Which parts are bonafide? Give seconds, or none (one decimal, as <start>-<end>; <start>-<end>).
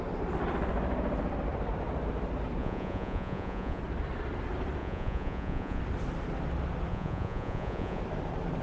0.0-2.6; 3.8-4.8; 5.8-6.9; 8.0-8.6